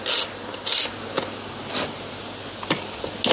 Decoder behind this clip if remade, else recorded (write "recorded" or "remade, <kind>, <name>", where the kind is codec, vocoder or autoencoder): recorded